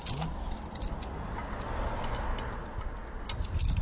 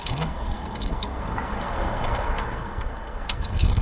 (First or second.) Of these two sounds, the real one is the first